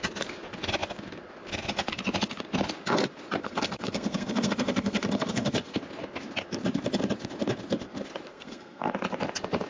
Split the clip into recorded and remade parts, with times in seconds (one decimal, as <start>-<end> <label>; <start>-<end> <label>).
0.0-3.4 recorded; 3.4-5.8 remade; 5.8-8.3 recorded; 8.3-8.9 remade; 8.9-9.7 recorded